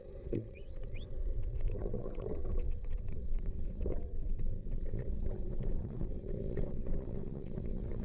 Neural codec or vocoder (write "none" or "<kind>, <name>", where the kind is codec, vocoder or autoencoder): vocoder, WaveNeXt